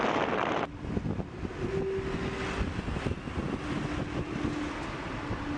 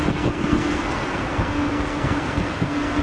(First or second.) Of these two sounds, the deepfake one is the second